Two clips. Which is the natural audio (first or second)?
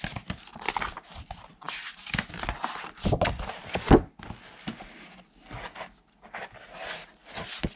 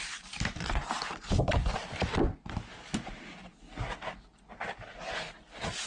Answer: first